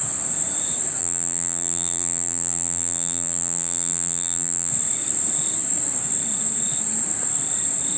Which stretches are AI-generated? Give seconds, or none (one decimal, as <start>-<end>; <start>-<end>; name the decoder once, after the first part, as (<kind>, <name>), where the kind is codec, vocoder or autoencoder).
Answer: 1.0-4.7 (vocoder, BigVGAN v2)